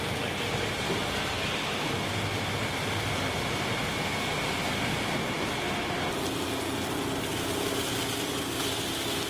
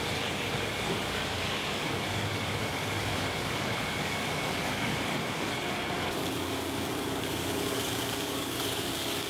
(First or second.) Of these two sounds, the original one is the first